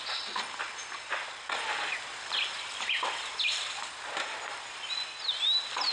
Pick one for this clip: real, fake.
real